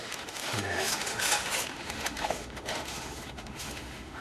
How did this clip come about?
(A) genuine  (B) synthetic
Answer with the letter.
B